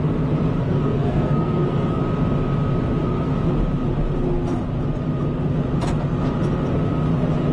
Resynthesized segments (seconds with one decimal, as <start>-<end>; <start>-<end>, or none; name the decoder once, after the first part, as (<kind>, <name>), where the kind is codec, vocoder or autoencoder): 0.6-2.0 (codec, SNAC); 3.0-3.5